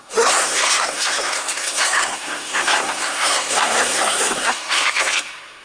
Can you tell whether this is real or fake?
fake